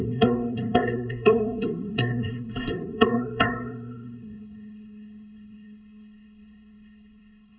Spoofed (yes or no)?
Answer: yes